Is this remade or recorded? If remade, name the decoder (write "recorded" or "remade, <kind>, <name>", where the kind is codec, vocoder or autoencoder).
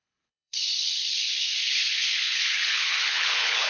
remade, codec, HILCodec